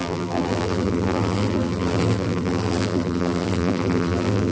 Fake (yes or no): yes